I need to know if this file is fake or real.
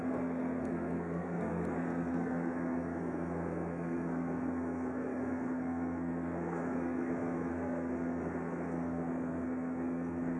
fake